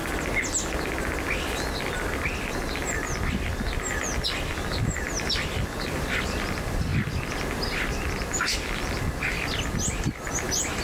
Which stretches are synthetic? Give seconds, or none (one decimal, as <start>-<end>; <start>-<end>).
4.5-6.9; 8.1-10.8